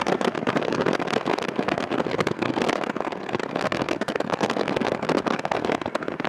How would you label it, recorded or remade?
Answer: remade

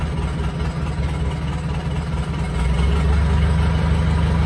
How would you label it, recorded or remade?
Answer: recorded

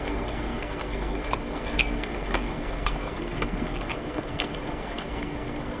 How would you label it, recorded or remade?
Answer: remade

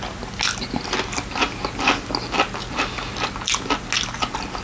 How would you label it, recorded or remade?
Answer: recorded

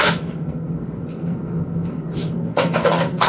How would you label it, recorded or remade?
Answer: remade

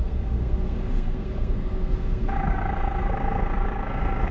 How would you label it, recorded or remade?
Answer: remade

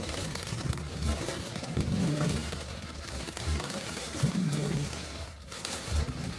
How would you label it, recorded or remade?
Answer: remade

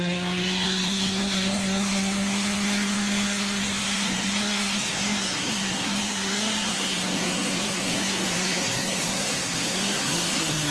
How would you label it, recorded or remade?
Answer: remade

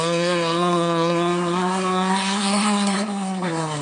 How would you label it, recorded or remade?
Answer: remade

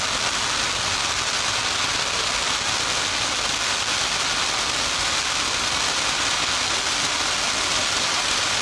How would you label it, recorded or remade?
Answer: recorded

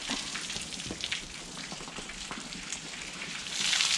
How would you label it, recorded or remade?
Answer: recorded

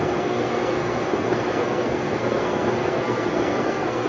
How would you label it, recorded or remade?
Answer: remade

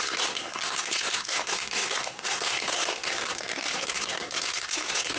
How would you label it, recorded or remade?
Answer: remade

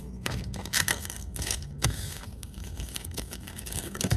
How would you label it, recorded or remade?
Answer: remade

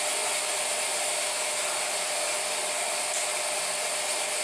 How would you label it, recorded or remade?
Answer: recorded